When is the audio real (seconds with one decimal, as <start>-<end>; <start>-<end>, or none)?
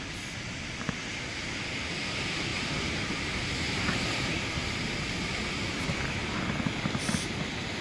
0.0-2.5; 4.9-7.8